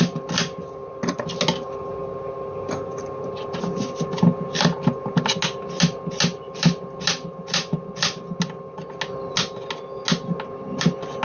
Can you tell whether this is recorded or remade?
recorded